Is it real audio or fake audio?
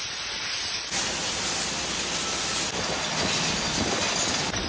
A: real